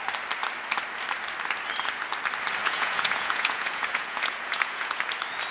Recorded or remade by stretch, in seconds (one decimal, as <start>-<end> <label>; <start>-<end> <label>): 0.0-2.6 recorded; 2.6-5.0 remade; 5.0-5.5 recorded